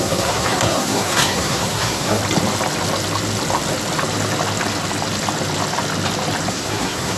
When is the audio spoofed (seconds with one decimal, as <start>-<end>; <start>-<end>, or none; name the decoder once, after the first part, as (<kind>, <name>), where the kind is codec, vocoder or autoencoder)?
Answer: 0.0-2.2 (codec, SNAC); 6.5-7.2